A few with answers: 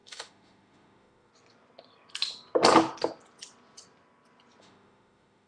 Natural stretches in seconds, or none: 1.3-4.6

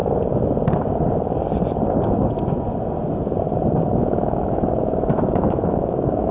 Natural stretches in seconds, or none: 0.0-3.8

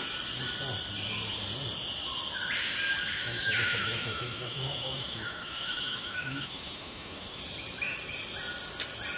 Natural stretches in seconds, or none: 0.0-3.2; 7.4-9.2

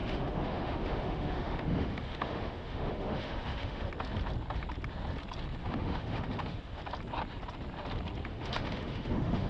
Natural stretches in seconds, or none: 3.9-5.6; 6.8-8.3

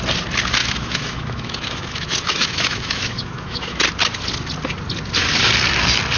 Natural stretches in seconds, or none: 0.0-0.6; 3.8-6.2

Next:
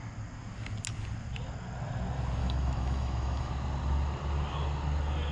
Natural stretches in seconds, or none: 0.0-2.4; 3.5-5.3

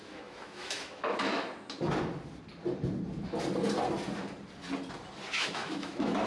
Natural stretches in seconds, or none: 1.5-5.3

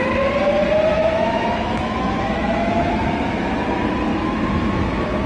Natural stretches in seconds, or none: 0.0-1.0; 3.1-4.1